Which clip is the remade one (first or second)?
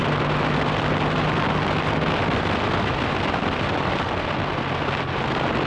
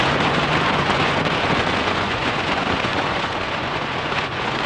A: second